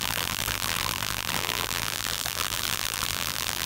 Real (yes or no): no